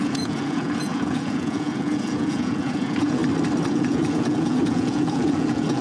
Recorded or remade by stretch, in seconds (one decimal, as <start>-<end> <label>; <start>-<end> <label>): 0.0-3.2 remade; 3.2-3.7 recorded; 3.7-5.8 remade